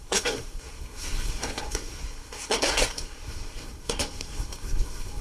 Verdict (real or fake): fake